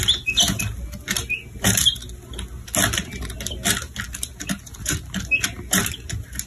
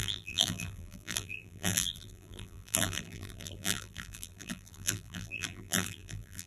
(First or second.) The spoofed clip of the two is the second